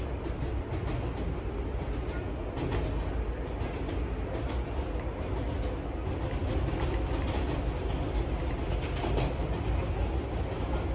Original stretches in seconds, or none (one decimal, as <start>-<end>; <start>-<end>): 0.0-10.9